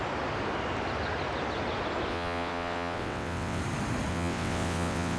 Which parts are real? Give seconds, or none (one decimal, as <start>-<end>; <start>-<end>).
0.0-2.1; 3.6-4.1